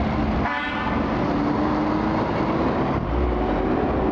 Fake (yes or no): no